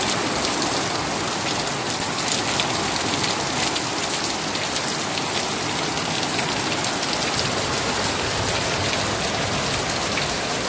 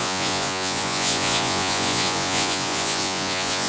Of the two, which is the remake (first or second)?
second